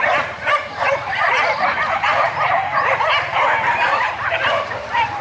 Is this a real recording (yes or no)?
no